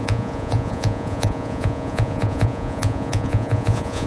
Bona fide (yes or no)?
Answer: no